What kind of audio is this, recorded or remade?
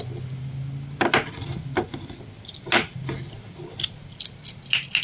recorded